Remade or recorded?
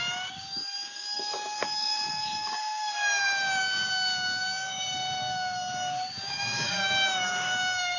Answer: remade